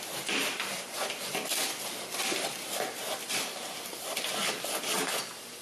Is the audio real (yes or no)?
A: no